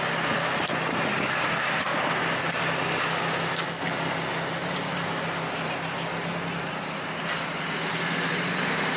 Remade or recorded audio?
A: recorded